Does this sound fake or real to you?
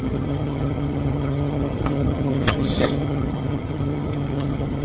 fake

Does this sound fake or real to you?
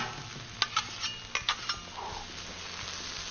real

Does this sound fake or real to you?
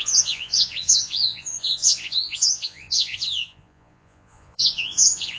fake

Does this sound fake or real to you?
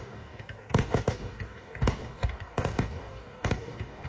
fake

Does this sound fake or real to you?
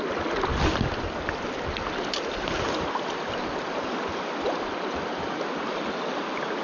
real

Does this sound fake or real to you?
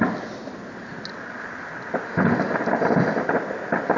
real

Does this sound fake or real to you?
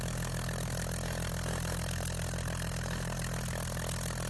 real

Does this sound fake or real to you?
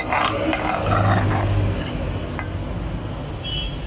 real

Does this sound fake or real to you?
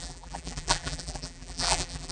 fake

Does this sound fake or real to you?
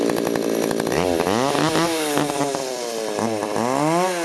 real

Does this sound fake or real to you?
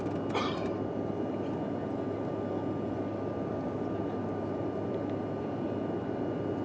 real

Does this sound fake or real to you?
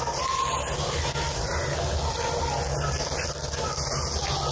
real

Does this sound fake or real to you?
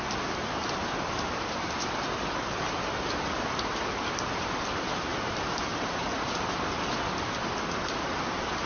real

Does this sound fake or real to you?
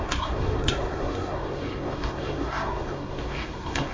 fake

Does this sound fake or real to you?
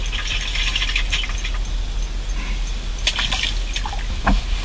real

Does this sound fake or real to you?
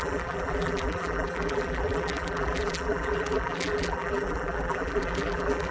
fake